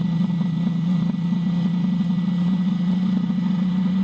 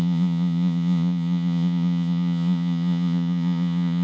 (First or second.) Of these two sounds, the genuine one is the first